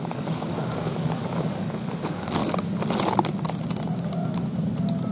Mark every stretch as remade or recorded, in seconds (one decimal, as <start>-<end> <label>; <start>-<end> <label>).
0.0-2.4 remade; 2.4-5.1 recorded